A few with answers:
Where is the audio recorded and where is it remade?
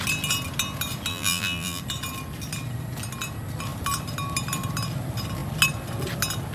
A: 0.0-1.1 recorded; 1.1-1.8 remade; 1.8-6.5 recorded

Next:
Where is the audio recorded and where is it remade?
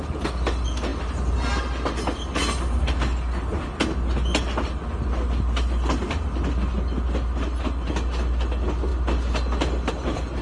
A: 0.0-10.4 recorded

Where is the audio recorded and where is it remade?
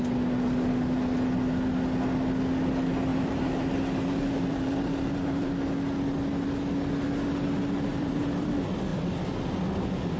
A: 0.0-3.1 recorded; 3.1-5.5 remade; 5.5-7.9 recorded; 7.9-8.5 remade; 8.5-10.2 recorded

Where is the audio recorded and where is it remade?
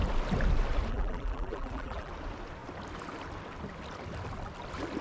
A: 0.0-0.9 recorded; 0.9-2.1 remade; 2.1-5.0 recorded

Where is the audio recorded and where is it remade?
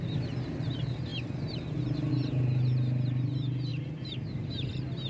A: 0.0-5.1 recorded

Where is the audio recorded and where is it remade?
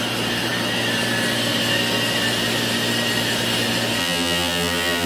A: 0.0-4.0 recorded; 4.0-5.1 remade